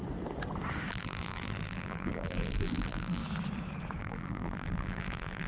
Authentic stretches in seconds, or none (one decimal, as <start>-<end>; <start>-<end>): 0.0-0.9; 3.2-4.0